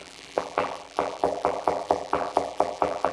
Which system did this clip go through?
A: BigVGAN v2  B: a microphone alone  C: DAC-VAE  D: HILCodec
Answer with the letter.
A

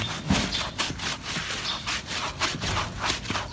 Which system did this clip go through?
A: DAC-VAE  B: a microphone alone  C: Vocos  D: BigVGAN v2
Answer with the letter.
B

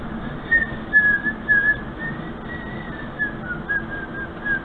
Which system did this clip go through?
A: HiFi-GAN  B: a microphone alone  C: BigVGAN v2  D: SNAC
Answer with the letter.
B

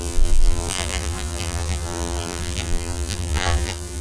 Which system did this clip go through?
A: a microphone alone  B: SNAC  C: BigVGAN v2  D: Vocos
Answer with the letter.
C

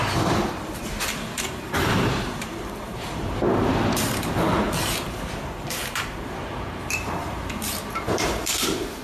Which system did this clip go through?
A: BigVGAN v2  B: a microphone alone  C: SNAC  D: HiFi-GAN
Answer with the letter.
A